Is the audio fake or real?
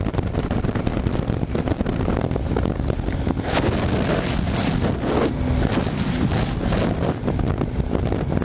real